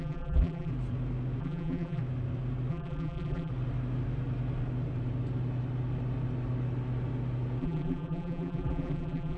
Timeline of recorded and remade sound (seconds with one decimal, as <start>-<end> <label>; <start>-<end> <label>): 0.0-0.7 remade; 0.7-1.4 recorded; 1.4-2.0 remade; 2.0-2.7 recorded; 2.7-3.5 remade; 3.5-7.6 recorded; 7.6-9.4 remade